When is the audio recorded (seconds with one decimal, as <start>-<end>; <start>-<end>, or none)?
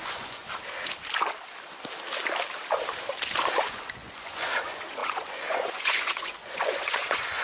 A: 0.4-3.5